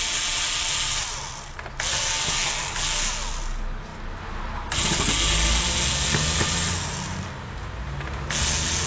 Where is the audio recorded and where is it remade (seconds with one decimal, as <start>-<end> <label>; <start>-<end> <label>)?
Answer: 0.0-8.9 recorded